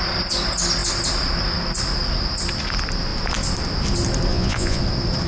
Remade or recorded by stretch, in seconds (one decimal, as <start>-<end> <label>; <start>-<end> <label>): 0.0-4.3 recorded; 4.3-4.8 remade; 4.8-5.3 recorded